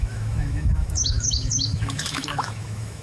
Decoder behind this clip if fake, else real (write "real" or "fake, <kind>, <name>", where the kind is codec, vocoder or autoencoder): fake, autoencoder, DAC-VAE